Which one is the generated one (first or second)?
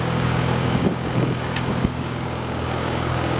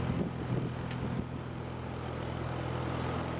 first